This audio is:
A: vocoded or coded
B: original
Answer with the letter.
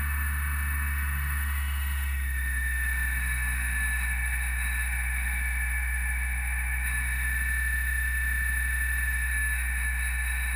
A